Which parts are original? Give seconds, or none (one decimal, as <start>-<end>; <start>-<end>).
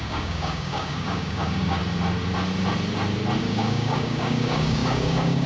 1.8-3.4